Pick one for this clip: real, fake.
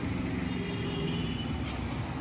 real